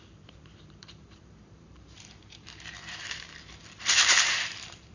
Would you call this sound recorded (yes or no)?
no